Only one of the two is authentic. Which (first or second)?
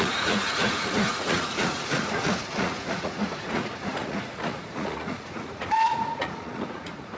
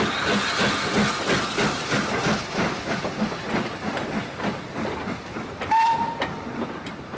second